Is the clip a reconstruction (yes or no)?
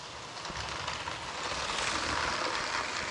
no